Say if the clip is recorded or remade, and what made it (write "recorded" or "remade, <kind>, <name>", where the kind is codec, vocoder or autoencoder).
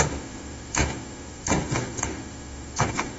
remade, autoencoder, DAC-VAE